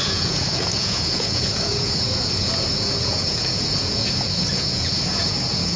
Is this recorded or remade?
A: remade